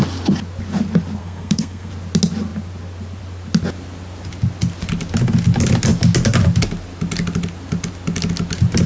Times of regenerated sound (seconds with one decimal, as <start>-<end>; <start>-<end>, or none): 1.2-1.9